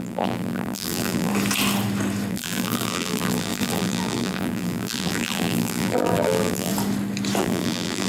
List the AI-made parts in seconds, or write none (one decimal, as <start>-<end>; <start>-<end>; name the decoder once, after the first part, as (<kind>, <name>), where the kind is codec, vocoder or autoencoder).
0.0-1.3 (vocoder, BigVGAN v2); 2.3-6.7; 7.4-8.1

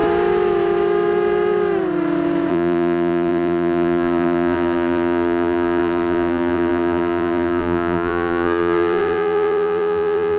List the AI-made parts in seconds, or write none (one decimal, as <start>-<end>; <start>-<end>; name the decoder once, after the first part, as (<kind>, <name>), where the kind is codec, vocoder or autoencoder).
2.5-10.4 (vocoder, BigVGAN v2)

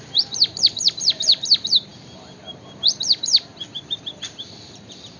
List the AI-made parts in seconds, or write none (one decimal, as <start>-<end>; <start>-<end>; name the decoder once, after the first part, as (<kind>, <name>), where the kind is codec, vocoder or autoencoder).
0.0-5.2 (vocoder, BigVGAN v2)

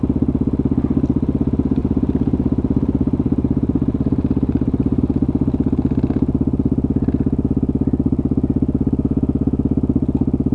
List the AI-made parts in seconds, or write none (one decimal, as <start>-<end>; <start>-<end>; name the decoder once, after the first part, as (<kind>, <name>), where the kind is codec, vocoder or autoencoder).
1.8-5.0 (vocoder, BigVGAN v2)

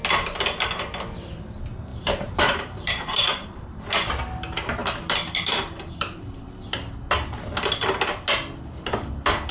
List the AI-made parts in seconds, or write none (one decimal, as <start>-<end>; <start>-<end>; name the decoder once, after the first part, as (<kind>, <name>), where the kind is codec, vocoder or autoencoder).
1.9-3.8 (vocoder, BigVGAN v2); 4.8-6.7

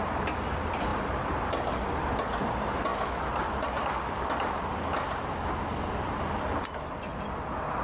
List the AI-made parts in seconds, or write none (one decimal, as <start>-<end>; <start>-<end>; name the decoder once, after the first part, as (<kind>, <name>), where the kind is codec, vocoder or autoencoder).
0.9-1.4 (vocoder, BigVGAN v2); 2.9-6.9